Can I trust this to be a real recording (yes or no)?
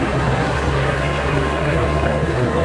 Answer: no